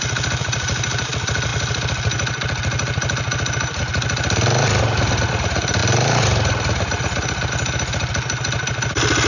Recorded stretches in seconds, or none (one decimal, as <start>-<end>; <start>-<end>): 0.0-9.3